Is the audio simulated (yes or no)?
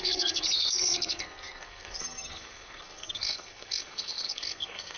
yes